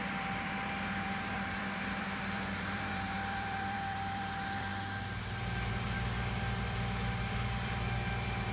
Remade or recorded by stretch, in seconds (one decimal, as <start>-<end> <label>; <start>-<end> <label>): 0.0-4.7 remade; 4.7-5.7 recorded; 5.7-8.5 remade